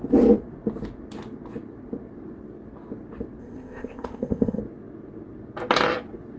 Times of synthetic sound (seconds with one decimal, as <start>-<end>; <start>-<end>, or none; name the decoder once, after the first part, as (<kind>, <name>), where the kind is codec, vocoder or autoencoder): 3.4-4.6 (codec, ZipCodec)